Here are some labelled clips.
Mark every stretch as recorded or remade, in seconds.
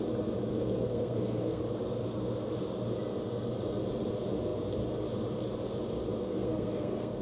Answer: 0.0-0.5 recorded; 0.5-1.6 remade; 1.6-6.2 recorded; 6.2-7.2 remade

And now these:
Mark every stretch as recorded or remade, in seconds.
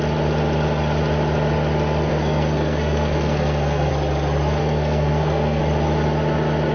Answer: 0.0-2.1 recorded; 2.1-3.9 remade; 3.9-4.6 recorded; 4.6-5.6 remade; 5.6-6.7 recorded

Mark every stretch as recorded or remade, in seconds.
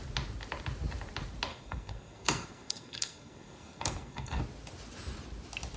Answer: 0.0-1.5 recorded; 1.5-4.4 remade; 4.4-5.8 recorded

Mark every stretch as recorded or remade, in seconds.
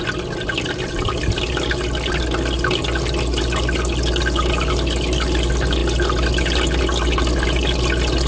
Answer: 0.0-8.3 recorded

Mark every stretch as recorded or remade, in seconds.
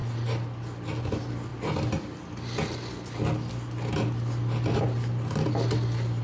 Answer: 0.0-6.2 recorded